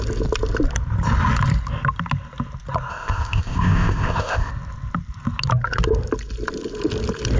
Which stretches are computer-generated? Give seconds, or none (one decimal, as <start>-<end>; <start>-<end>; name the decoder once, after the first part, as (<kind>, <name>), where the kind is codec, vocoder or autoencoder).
2.9-4.5 (codec, ZipCodec)